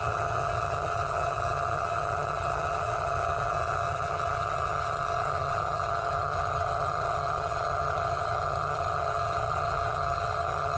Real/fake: fake